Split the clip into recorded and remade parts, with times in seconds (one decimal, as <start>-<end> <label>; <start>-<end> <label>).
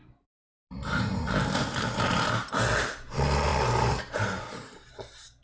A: 0.0-2.5 remade; 2.5-3.5 recorded; 3.5-4.9 remade; 4.9-5.4 recorded